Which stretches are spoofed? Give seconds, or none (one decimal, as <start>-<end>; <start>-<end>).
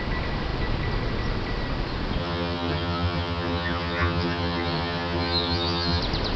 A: 2.2-6.0